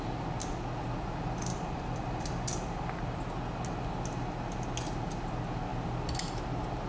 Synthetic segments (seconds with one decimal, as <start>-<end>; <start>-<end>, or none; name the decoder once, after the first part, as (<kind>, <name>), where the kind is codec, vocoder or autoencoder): 1.5-3.2 (vocoder, BigVGAN v2)